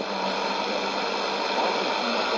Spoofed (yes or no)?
no